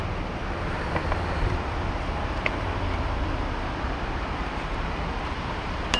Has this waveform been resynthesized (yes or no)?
no